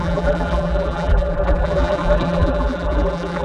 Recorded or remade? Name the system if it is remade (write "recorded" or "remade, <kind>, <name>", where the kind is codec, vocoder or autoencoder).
remade, vocoder, BigVGAN v2